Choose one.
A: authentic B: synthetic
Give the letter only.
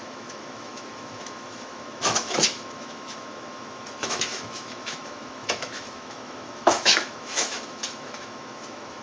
B